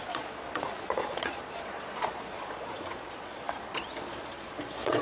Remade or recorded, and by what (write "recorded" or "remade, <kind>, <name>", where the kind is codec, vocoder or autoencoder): remade, vocoder, Vocos